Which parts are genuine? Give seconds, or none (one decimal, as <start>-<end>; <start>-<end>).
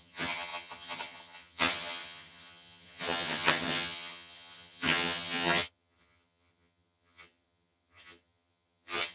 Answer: none